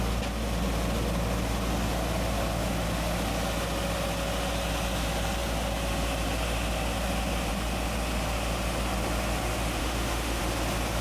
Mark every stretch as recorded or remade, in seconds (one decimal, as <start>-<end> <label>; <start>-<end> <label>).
0.0-9.8 recorded; 9.8-10.4 remade; 10.4-11.0 recorded